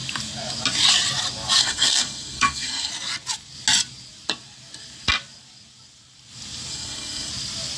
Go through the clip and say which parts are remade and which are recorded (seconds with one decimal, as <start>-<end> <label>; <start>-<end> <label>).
0.0-1.6 recorded; 1.6-2.9 remade; 2.9-6.7 recorded; 6.7-7.3 remade; 7.3-7.8 recorded